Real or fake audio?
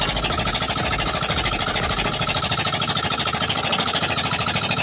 real